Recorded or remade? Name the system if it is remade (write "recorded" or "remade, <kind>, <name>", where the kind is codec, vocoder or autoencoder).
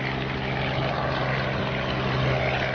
recorded